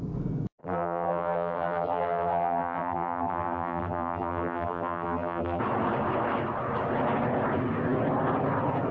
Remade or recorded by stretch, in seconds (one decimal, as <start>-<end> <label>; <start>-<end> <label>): 0.0-0.6 recorded; 0.6-5.6 remade; 5.6-8.9 recorded